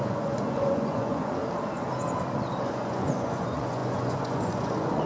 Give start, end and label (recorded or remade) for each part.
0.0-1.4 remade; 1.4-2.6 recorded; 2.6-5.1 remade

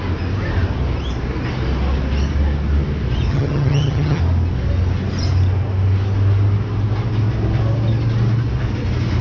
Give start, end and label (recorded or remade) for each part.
0.0-3.3 recorded; 3.3-4.2 remade; 4.2-9.2 recorded

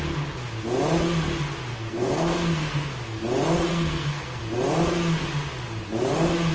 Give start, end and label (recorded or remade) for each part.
0.0-1.7 recorded; 1.7-2.9 remade; 2.9-3.7 recorded; 3.7-4.4 remade; 4.4-6.5 recorded

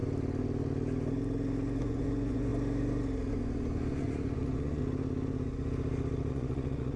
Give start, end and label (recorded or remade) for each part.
0.0-1.8 recorded; 1.8-2.5 remade; 2.5-3.3 recorded; 3.3-4.8 remade; 4.8-6.3 recorded; 6.3-7.0 remade

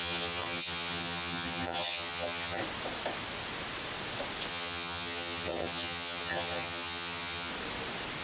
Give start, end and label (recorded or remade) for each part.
0.0-2.6 remade; 2.6-4.5 recorded; 4.5-7.5 remade; 7.5-8.2 recorded

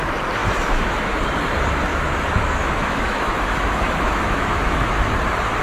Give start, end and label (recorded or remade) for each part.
0.0-0.4 recorded; 0.4-1.2 remade; 1.2-1.9 recorded; 1.9-4.9 remade; 4.9-5.6 recorded

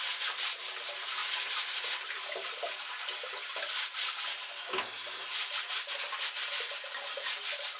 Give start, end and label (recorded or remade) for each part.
0.0-7.8 recorded